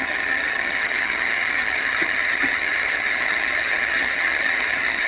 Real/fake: fake